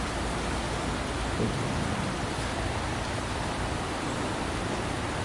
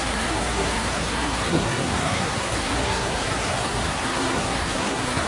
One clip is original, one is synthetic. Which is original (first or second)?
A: first